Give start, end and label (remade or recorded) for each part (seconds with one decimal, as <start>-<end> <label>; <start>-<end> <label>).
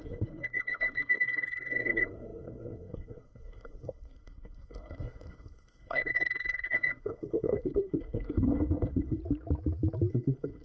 0.0-9.2 remade; 9.2-10.1 recorded; 10.1-10.6 remade